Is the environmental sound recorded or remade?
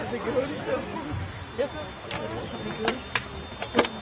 recorded